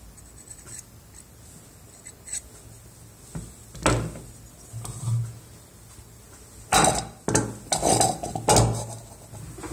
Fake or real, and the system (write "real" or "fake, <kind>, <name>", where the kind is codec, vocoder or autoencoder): real